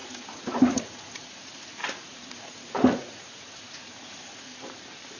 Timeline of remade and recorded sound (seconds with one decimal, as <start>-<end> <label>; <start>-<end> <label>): 0.0-4.5 remade; 4.5-5.2 recorded